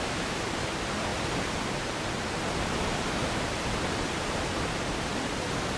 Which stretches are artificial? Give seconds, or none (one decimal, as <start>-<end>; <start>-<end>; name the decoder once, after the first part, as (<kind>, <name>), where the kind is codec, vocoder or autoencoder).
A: none